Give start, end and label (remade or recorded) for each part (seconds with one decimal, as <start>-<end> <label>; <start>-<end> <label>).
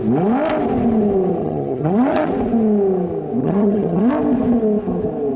0.0-1.4 recorded; 1.4-2.3 remade; 2.3-3.4 recorded; 3.4-4.1 remade; 4.1-5.4 recorded